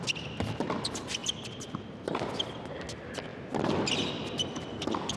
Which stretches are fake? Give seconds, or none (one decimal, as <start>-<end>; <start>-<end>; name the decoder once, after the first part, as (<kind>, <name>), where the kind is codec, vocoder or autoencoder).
none